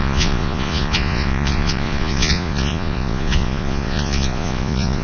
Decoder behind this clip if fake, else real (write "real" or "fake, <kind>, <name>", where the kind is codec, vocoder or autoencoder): fake, vocoder, Vocos